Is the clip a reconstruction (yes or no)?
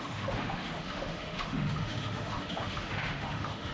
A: yes